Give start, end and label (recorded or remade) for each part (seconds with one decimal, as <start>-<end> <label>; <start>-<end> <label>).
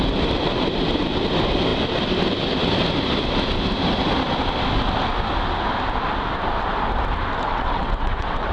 0.0-7.5 recorded; 7.5-8.5 remade